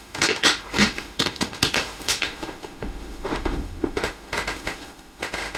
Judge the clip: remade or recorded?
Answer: remade